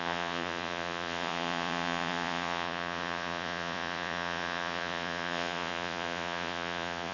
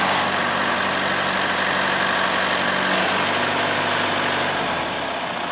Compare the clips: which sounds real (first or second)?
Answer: second